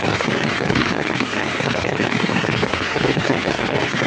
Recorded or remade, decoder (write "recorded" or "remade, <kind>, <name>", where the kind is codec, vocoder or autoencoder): remade, codec, SNAC